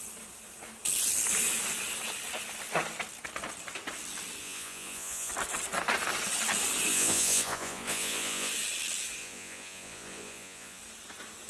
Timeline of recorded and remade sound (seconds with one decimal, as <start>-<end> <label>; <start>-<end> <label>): 0.0-4.4 recorded; 4.4-5.3 remade; 5.3-6.9 recorded; 6.9-8.5 remade; 8.5-9.2 recorded; 9.2-10.8 remade; 10.8-11.5 recorded